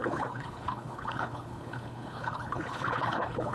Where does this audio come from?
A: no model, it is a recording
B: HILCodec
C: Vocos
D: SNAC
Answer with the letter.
B